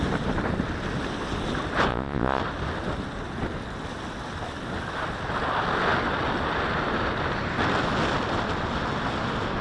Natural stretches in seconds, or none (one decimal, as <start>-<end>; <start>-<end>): 0.0-1.9; 2.4-9.6